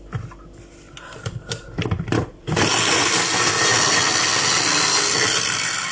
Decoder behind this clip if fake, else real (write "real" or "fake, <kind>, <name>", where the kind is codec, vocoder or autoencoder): real